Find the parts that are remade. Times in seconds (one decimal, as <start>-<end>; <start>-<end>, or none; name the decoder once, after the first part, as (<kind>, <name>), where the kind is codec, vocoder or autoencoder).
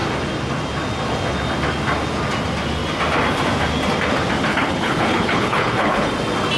4.5-6.1 (codec, HILCodec)